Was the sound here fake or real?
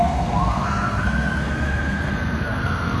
fake